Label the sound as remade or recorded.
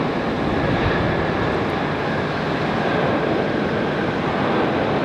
recorded